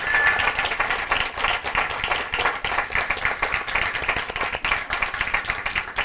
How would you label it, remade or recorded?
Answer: recorded